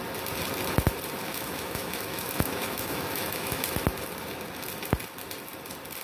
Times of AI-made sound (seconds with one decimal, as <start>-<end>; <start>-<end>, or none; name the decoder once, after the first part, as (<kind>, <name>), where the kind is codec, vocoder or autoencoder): 1.2-3.6 (autoencoder, DAC-VAE)